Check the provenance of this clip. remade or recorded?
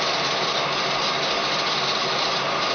recorded